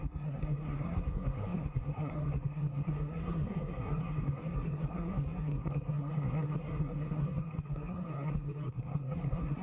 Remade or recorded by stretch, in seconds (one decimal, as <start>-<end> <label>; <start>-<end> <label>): 0.0-9.6 remade